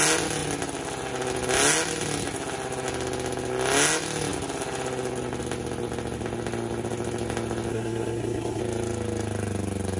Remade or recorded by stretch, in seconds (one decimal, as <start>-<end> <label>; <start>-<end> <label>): 0.0-7.7 recorded; 7.7-8.6 remade; 8.6-10.0 recorded